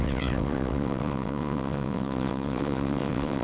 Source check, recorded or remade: remade